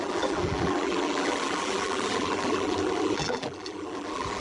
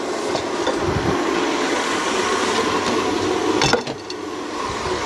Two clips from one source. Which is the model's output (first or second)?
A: first